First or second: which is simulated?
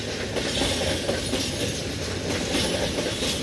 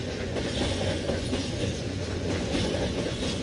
second